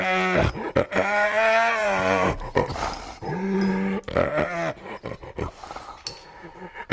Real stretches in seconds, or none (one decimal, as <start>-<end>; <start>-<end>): 0.0-1.8; 2.7-6.9